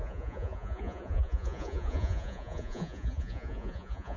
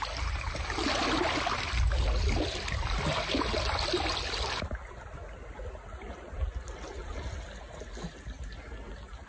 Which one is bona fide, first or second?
second